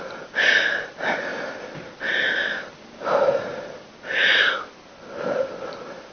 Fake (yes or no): no